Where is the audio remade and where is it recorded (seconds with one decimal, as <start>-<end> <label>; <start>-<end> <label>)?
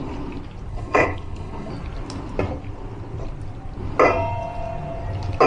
0.0-0.7 recorded; 0.7-1.7 remade; 1.7-5.5 recorded